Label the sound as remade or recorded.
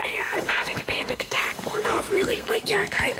remade